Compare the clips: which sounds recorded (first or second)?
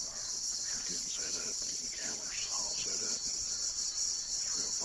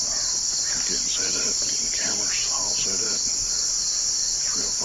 second